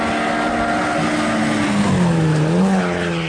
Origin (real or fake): real